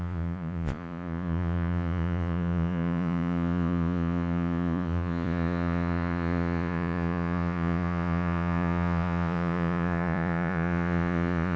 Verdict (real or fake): fake